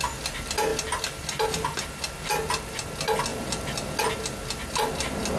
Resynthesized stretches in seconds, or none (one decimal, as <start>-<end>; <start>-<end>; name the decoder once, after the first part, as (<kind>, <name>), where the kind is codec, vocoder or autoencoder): none